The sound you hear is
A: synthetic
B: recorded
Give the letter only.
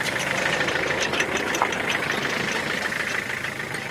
A